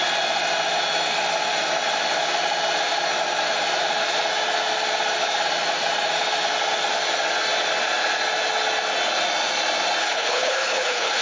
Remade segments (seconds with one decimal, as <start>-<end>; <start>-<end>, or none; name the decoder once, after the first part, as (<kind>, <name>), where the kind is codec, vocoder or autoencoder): 10.0-11.2 (codec, HILCodec)